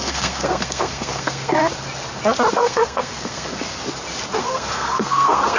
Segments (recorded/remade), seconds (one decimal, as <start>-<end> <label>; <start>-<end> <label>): 0.0-1.6 remade; 1.6-2.5 recorded; 2.5-3.8 remade; 3.8-4.4 recorded; 4.4-5.6 remade